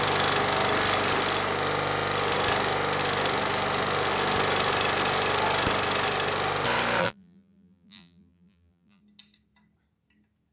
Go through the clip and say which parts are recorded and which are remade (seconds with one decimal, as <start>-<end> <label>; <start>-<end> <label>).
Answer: 0.0-7.0 recorded; 7.0-9.0 remade; 9.0-10.5 recorded